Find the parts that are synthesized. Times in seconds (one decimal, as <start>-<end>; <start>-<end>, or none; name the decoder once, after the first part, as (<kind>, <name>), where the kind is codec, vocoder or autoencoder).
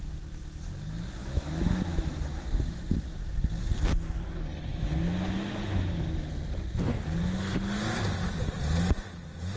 1.2-2.8 (autoencoder, DAC-VAE); 4.7-6.3